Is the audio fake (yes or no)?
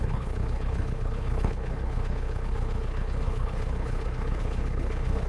yes